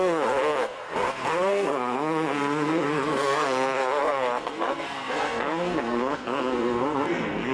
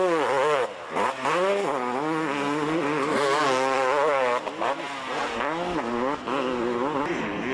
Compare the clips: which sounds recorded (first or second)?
second